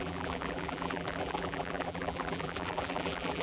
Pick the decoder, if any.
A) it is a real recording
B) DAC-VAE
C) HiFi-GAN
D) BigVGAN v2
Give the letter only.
D